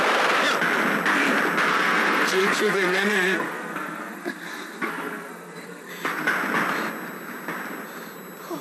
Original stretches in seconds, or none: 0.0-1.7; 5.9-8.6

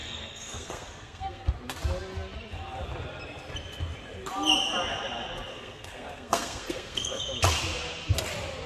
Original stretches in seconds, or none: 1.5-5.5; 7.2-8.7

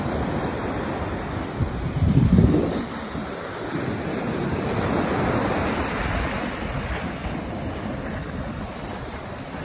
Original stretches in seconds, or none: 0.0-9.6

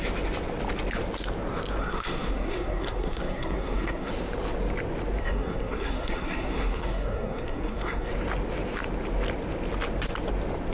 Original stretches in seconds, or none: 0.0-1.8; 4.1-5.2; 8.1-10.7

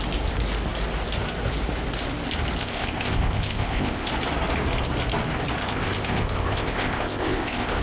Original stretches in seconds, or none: 0.0-2.6; 4.1-5.6

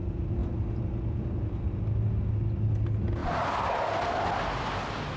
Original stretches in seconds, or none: 0.0-0.4; 1.8-5.2

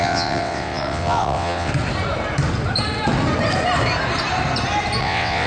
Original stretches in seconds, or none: 1.7-5.0